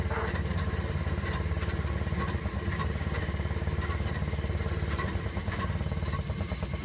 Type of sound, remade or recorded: recorded